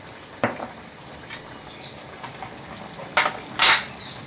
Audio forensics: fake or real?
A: real